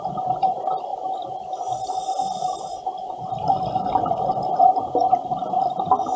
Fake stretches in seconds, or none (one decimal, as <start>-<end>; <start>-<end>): none